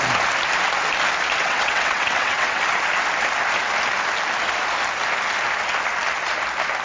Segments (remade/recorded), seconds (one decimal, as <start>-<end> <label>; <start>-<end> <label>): 0.0-1.4 recorded; 1.4-2.6 remade; 2.6-6.8 recorded

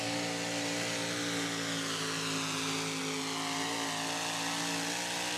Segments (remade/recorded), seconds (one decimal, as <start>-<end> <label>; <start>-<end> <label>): 0.0-5.4 recorded